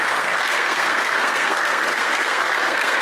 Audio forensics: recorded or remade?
remade